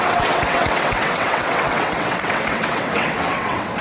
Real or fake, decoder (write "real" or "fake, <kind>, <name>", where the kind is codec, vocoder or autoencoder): fake, vocoder, WaveNeXt